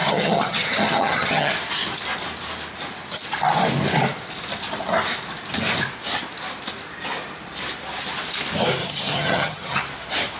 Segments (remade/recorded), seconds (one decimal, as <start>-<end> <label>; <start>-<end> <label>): 0.0-1.5 remade; 1.5-8.8 recorded; 8.8-9.8 remade; 9.8-10.4 recorded